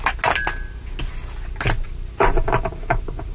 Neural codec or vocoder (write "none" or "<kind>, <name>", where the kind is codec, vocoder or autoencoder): none